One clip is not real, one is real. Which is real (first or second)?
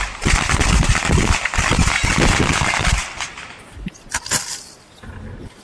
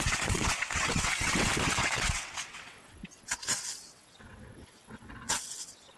first